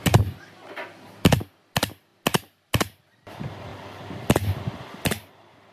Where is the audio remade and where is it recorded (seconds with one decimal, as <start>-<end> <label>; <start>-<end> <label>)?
0.0-5.7 recorded